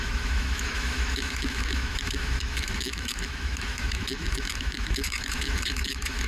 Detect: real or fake fake